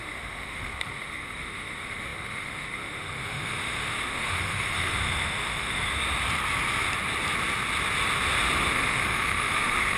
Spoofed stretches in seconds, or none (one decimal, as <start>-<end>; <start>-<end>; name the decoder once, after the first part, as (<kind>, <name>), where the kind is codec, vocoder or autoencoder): 0.0-5.9 (autoencoder, DAC-VAE); 8.7-10.0